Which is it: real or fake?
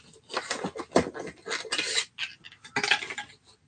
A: real